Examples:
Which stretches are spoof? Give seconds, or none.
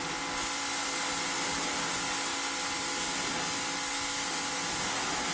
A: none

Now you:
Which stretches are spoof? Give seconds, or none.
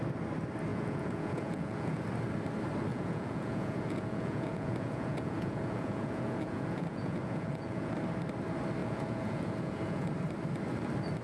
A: 0.7-2.0; 2.9-7.9; 8.8-10.1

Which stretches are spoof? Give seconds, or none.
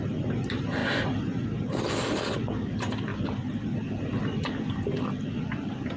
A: none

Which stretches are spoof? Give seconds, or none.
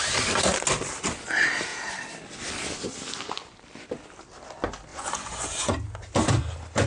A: 4.9-5.7